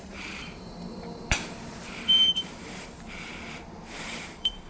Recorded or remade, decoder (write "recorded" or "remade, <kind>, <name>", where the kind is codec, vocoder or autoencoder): remade, vocoder, BigVGAN v2